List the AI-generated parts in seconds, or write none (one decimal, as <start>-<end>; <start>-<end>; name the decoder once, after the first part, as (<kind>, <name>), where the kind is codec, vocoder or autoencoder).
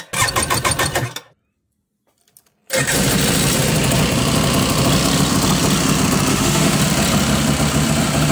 6.3-6.8 (autoencoder, DAC-VAE)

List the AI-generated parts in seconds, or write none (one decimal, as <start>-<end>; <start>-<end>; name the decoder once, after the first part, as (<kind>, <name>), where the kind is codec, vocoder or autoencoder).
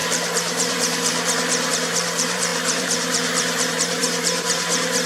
0.0-5.1 (vocoder, BigVGAN v2)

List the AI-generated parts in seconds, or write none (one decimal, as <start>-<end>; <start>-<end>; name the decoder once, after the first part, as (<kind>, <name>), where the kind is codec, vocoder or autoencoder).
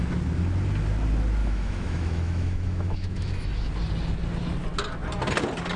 1.4-3.7 (autoencoder, DAC-VAE)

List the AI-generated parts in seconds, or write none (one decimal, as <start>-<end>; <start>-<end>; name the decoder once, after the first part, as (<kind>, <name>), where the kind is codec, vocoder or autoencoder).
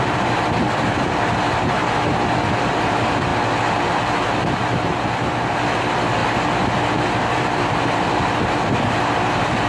0.0-1.8 (vocoder, BigVGAN v2); 2.6-6.2; 6.9-9.7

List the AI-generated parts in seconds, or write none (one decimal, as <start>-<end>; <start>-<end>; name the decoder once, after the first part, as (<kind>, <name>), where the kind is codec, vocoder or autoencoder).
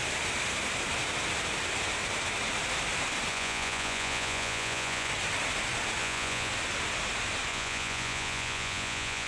3.3-5.1 (vocoder, Vocos); 6.0-6.5; 7.5-9.3